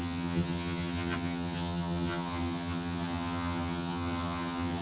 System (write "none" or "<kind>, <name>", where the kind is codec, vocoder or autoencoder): vocoder, HiFi-GAN